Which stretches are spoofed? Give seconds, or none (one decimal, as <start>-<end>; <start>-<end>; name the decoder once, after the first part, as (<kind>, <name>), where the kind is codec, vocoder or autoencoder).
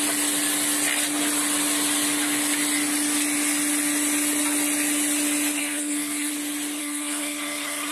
5.6-6.3 (codec, SNAC); 6.8-7.9